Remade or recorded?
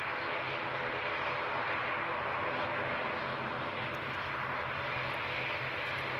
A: recorded